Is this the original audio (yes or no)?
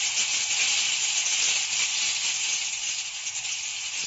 yes